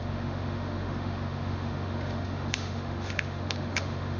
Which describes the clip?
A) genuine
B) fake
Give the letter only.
B